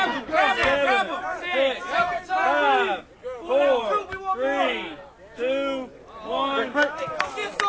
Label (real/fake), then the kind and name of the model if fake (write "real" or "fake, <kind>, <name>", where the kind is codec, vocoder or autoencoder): real